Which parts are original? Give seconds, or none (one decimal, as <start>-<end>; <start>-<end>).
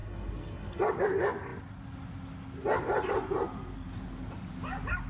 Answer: 0.8-5.1